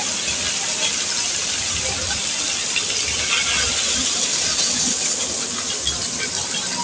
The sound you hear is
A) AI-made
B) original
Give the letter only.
B